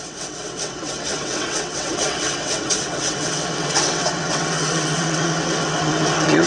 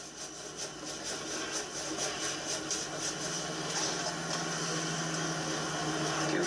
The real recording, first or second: second